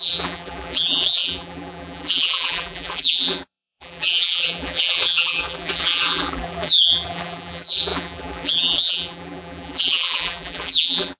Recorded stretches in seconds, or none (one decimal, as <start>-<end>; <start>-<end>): none